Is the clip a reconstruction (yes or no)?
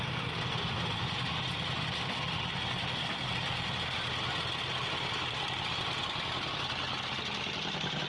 no